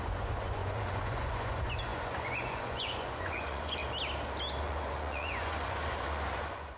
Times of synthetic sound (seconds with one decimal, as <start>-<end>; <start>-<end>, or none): 0.0-3.8; 4.6-6.8